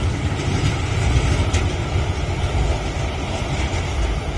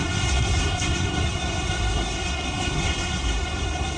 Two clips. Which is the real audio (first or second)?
first